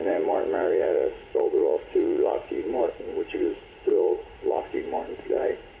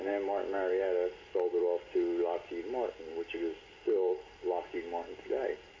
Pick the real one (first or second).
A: second